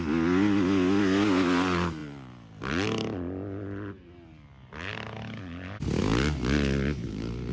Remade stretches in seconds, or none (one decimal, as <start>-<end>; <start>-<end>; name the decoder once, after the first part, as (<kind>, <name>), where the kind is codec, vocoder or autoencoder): none